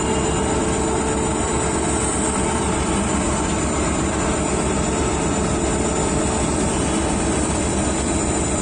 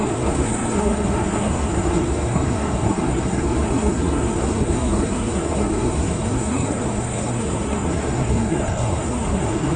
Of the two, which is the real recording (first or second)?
first